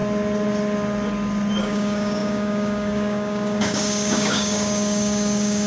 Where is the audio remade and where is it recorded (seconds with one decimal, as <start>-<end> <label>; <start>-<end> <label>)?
0.0-1.6 recorded; 1.6-5.7 remade